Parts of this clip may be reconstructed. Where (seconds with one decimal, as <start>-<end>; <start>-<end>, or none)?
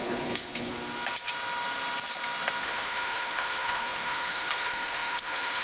0.0-0.7; 2.6-5.6